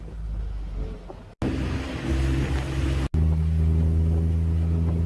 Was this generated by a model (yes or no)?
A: no